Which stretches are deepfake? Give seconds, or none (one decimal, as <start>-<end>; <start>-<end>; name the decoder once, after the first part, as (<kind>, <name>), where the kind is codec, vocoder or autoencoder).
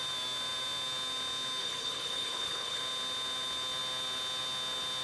1.6-2.8 (codec, HILCodec)